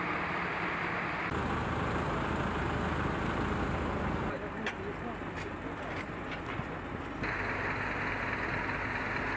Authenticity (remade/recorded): recorded